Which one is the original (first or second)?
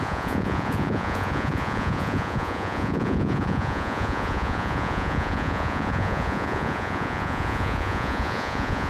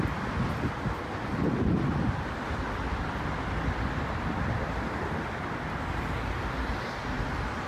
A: second